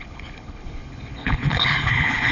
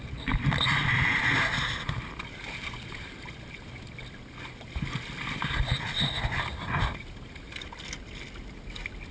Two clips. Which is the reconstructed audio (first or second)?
first